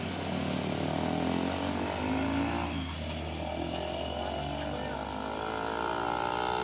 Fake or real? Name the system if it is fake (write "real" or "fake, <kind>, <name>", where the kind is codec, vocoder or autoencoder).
real